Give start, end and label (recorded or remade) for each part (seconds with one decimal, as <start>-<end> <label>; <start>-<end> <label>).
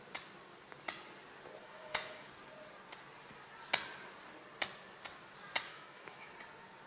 0.0-1.6 recorded; 1.6-2.3 remade; 2.3-5.7 recorded; 5.7-6.3 remade; 6.3-6.9 recorded